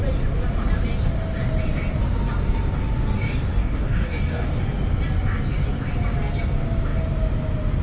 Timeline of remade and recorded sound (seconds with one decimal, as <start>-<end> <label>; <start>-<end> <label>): 0.0-3.6 recorded; 3.6-4.6 remade; 4.6-7.8 recorded